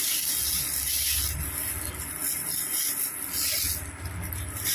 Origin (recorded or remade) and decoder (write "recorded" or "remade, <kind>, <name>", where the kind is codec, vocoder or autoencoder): recorded